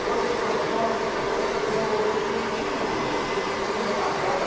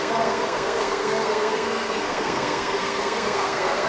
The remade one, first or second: second